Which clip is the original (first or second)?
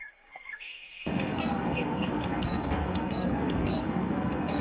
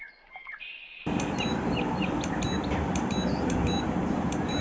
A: second